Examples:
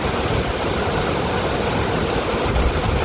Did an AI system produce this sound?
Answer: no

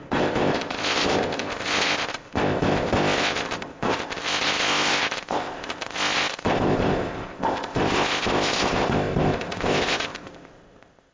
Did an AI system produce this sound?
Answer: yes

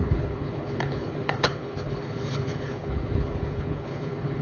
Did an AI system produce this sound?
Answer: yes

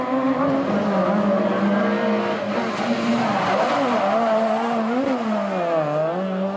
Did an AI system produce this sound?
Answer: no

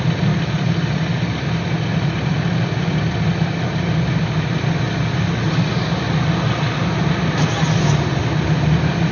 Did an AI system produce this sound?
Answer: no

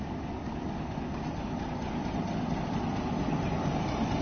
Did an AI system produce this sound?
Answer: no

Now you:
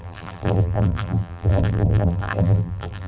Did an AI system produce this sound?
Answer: yes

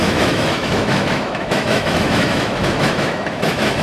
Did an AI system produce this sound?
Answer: yes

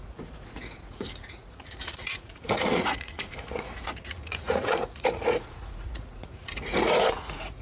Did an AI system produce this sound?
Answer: yes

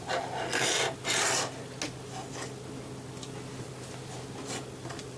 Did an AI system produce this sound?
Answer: no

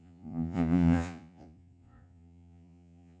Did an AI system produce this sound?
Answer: yes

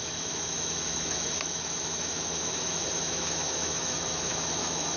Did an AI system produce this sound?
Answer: yes